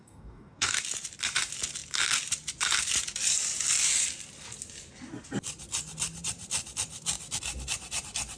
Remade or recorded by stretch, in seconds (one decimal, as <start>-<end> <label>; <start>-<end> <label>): 0.0-0.8 remade; 0.8-8.4 recorded